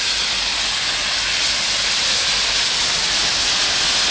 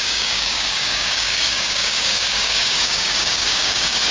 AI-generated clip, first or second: second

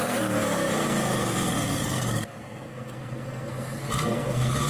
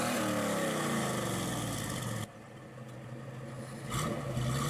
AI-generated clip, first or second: first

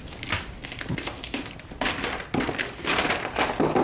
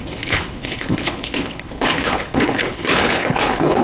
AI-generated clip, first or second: second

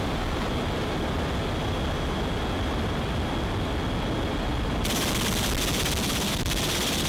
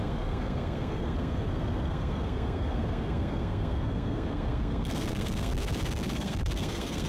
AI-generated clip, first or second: second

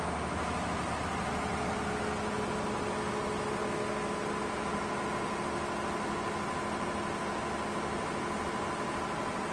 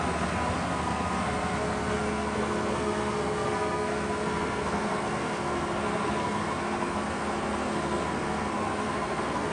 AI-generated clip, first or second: second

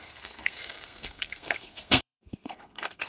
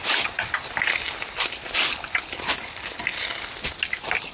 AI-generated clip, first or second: first